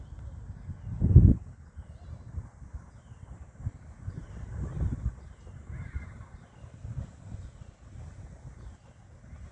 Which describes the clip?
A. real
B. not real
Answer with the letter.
A